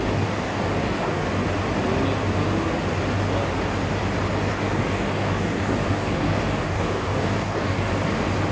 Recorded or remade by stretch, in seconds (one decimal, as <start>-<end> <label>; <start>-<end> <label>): 0.0-1.2 remade; 1.2-4.5 recorded; 4.5-7.9 remade; 7.9-8.5 recorded